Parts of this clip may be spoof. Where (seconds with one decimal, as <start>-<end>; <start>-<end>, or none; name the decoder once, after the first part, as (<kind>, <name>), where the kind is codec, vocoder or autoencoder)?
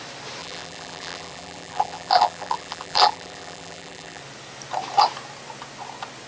0.4-4.2 (vocoder, BigVGAN v2)